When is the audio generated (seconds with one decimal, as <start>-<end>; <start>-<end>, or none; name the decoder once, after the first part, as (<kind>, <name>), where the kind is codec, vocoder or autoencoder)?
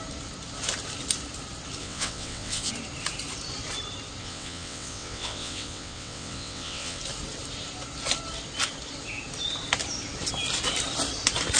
1.8-2.7 (vocoder, WaveNeXt); 4.2-7.0